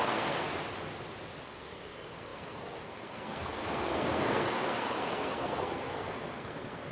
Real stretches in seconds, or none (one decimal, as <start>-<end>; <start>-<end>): 0.5-1.4